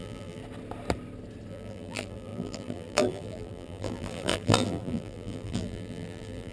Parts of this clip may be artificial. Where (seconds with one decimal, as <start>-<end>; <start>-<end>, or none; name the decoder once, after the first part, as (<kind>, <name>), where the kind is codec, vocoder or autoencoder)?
0.0-0.4 (vocoder, BigVGAN v2); 1.5-6.5